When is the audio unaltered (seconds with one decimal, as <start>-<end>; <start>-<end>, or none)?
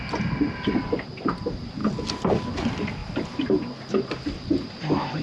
0.0-5.2